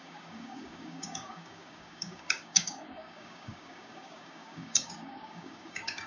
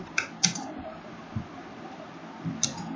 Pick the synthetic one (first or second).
first